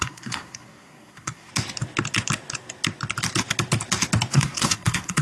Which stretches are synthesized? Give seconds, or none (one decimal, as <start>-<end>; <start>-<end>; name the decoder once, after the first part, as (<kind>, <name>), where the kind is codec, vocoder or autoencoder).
0.0-1.5 (codec, SNAC); 4.3-5.2